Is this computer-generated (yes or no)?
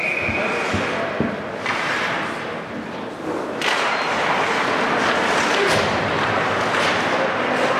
no